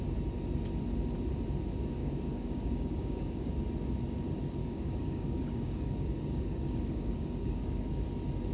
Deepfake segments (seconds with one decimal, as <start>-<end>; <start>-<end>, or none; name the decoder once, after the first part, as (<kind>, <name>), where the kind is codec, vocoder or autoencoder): 2.0-3.5 (codec, DAC); 4.6-8.0